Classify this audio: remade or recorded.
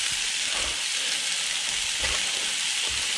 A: recorded